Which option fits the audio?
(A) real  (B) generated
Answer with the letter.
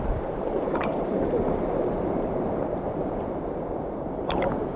B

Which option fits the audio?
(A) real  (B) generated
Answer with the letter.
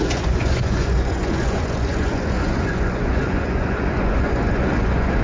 B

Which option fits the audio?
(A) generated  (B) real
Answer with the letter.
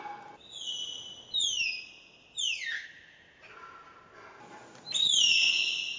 B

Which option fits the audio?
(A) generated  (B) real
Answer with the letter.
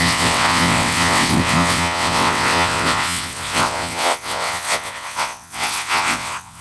A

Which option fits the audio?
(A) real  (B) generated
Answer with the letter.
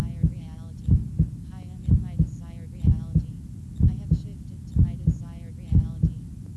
A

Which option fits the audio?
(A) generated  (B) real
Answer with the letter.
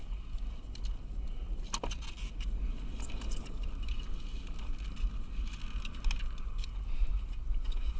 B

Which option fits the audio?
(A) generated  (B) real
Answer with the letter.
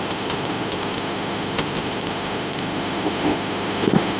A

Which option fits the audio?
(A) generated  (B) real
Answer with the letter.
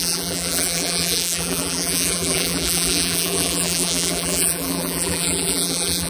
A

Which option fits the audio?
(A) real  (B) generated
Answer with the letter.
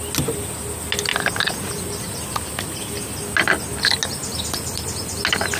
A